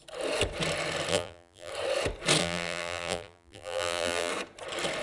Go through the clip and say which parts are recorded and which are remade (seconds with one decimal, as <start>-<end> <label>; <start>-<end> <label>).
0.0-1.1 recorded; 1.1-1.7 remade; 1.7-2.4 recorded; 2.4-4.3 remade; 4.3-5.0 recorded